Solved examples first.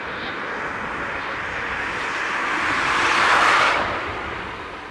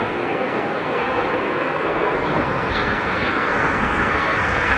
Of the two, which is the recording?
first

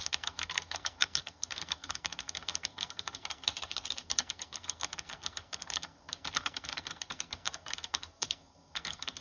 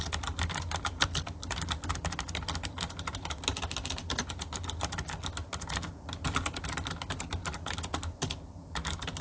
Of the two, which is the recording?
second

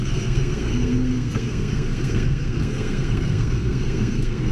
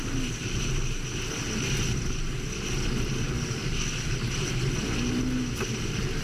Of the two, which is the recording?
second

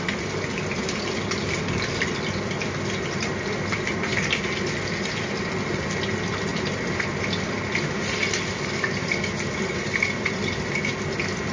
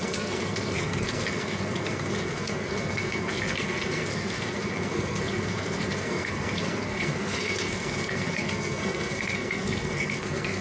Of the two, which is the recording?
first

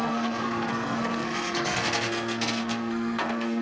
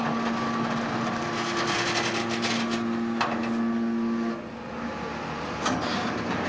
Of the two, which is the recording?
second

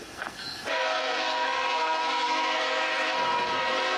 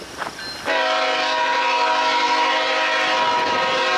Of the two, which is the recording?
second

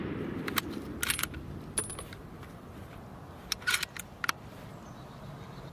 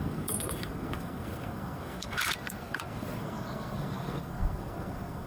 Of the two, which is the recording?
first